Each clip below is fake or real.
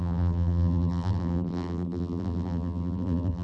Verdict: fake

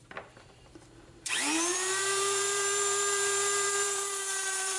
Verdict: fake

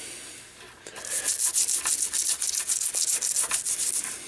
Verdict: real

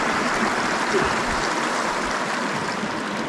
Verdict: real